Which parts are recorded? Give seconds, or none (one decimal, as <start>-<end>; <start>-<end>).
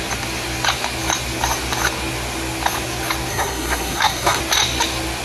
0.0-3.3; 4.4-5.2